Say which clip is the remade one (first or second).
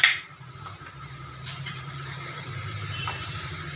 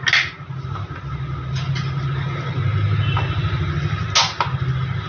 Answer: first